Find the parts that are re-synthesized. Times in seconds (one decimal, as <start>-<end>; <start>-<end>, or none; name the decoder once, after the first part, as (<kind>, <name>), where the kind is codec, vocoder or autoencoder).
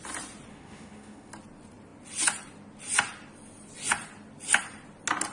0.5-1.3 (autoencoder, DAC-VAE)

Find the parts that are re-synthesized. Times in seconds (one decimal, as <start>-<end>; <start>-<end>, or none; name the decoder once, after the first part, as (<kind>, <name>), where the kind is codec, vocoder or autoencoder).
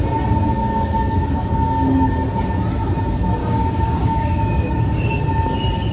0.6-2.1 (codec, DAC); 3.4-5.2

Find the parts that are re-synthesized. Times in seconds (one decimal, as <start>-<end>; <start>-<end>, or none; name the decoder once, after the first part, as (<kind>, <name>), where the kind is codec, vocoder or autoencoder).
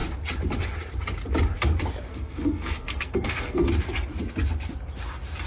2.1-3.7 (codec, SNAC)